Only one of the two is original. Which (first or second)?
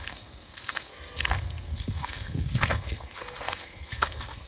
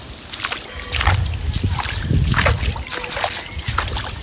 second